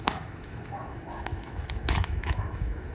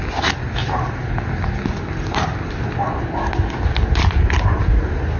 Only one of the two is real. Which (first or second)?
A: second